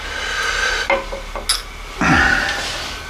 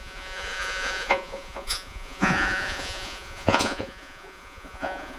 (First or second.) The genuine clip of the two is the first